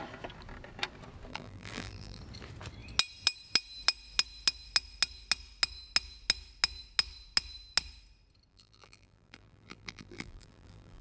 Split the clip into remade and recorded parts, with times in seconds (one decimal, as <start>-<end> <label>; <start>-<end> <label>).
0.0-1.3 recorded; 1.3-2.2 remade; 2.2-8.5 recorded; 8.5-11.0 remade